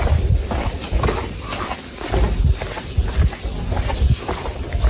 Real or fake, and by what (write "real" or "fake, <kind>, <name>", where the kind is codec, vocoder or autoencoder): real